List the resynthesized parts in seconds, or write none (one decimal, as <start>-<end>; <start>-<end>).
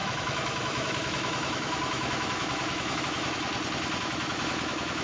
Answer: 0.0-3.5; 4.0-5.0